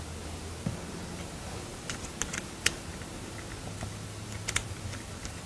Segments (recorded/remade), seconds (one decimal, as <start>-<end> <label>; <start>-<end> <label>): 0.0-5.5 recorded